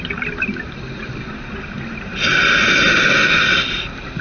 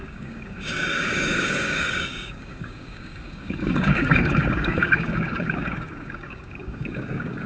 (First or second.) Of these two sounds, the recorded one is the first